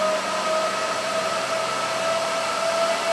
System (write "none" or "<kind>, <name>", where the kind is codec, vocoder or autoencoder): none